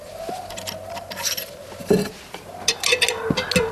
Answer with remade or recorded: recorded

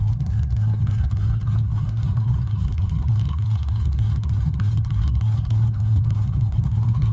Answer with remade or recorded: remade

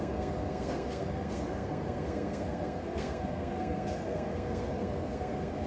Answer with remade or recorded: remade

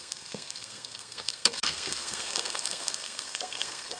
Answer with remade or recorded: remade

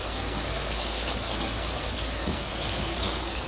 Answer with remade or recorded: remade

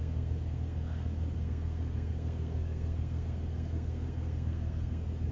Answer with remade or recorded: remade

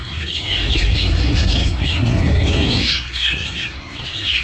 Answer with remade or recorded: remade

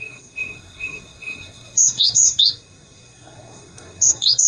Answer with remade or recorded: remade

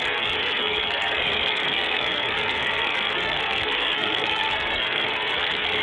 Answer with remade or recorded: remade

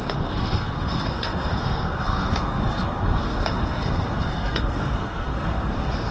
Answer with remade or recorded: remade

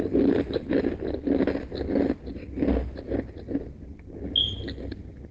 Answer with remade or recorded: recorded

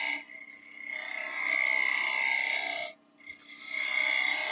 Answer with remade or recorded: recorded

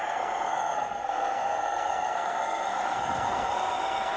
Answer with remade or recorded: remade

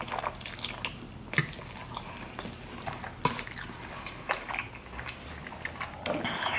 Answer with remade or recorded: recorded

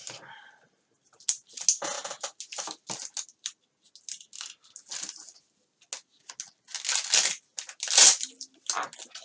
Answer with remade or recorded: recorded